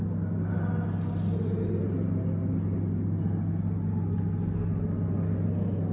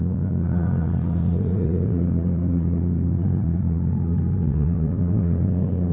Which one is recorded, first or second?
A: first